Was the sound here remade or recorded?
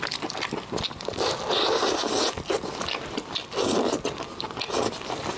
recorded